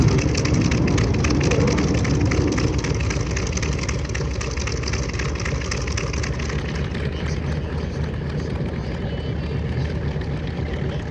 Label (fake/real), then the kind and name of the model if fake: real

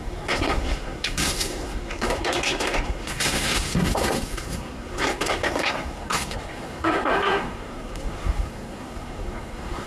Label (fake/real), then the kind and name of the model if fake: fake, codec, SNAC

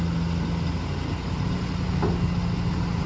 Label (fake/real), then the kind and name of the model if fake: real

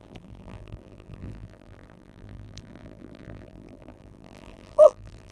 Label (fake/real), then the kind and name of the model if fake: fake, vocoder, BigVGAN v2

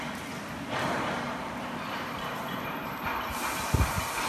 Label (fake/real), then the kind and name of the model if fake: real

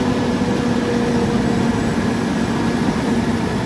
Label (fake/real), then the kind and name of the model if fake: real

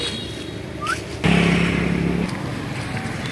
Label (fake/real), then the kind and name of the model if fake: real